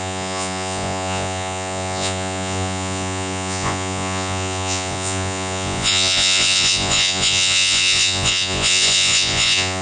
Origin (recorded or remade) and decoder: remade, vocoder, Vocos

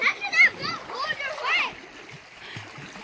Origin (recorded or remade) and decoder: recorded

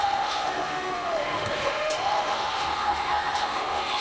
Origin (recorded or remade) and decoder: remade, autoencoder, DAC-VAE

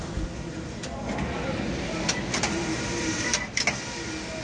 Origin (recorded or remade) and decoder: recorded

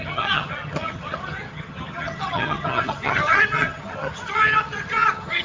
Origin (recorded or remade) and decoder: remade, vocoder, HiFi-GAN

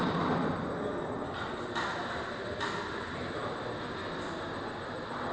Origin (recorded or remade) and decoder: recorded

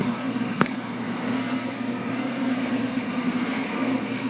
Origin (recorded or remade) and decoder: remade, codec, SNAC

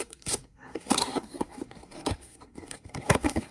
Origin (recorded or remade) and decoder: remade, codec, SNAC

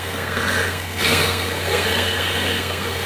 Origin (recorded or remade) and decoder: remade, codec, SNAC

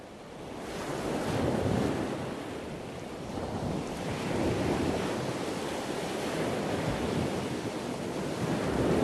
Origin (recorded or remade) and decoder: recorded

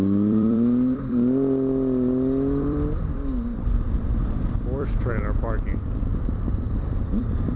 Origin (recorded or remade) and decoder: remade, vocoder, BigVGAN v2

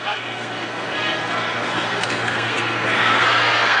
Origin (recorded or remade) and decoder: remade, codec, SNAC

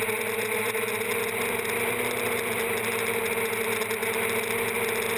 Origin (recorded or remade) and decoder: recorded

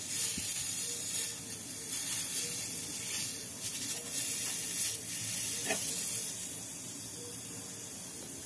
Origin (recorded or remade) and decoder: recorded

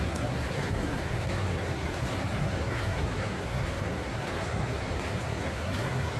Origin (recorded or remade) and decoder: remade, codec, SNAC